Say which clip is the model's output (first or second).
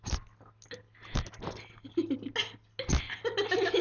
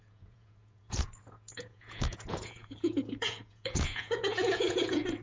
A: second